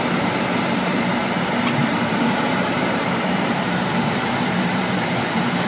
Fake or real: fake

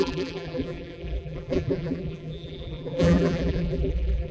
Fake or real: fake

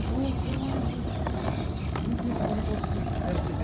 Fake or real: real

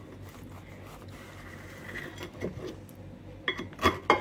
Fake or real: real